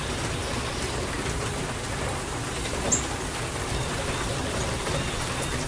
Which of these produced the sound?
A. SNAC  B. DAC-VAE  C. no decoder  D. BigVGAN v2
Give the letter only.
C